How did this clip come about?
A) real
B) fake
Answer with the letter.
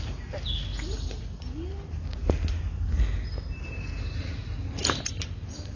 A